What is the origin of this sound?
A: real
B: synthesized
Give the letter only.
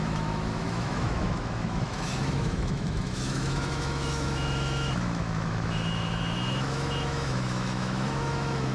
B